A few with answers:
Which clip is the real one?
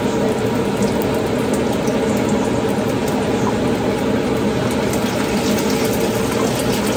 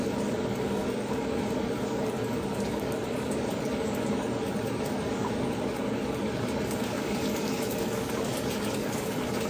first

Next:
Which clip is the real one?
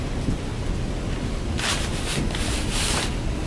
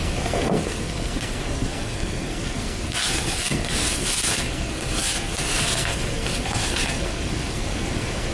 first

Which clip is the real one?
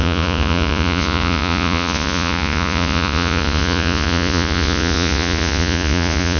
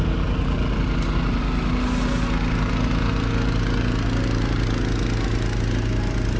second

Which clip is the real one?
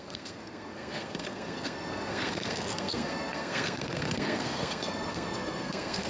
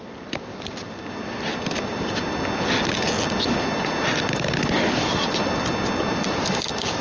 second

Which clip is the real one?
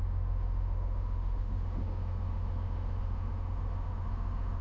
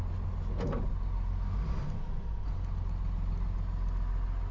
second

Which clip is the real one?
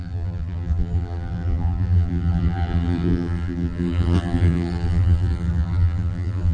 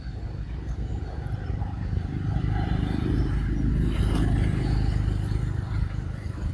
second